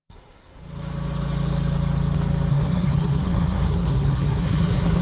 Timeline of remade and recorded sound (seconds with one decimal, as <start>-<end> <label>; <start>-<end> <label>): 0.0-0.6 remade; 0.6-2.5 recorded; 2.5-5.0 remade